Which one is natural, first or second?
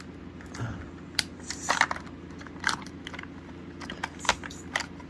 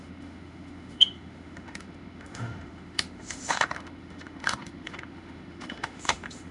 first